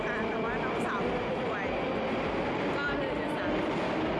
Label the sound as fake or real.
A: real